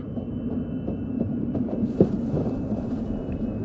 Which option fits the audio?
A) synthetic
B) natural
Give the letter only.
A